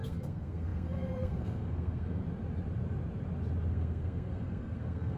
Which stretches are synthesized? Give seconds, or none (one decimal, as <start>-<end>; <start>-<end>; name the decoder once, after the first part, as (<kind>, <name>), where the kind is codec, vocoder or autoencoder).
0.0-2.2 (codec, SNAC); 3.7-5.2

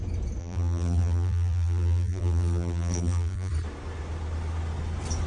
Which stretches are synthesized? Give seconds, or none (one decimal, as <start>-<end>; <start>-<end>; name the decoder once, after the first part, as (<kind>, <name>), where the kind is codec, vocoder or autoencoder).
0.4-3.5 (vocoder, BigVGAN v2)

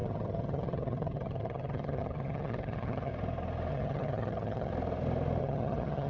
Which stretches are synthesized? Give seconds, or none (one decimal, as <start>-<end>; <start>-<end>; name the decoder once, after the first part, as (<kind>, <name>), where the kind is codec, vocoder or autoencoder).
0.0-3.1 (vocoder, HiFi-GAN); 3.7-4.7; 5.4-6.1

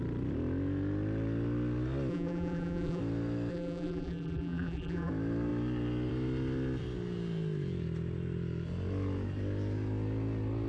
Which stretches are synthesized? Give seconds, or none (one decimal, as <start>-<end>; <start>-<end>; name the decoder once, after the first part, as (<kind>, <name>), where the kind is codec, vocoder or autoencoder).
2.1-3.0 (vocoder, BigVGAN v2); 3.5-5.1

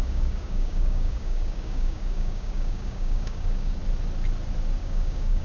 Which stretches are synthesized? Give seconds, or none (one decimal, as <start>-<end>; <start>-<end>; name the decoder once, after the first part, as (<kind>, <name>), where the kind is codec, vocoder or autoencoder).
0.0-3.8 (codec, DAC); 4.8-5.4